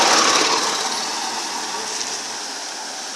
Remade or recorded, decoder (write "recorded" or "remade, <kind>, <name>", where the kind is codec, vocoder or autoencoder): recorded